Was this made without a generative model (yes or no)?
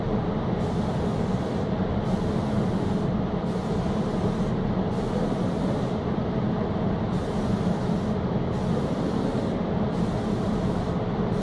yes